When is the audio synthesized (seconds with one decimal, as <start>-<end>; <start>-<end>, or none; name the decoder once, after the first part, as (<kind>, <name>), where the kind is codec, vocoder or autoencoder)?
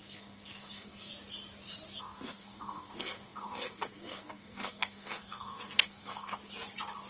0.0-1.1 (codec, SNAC); 2.0-6.4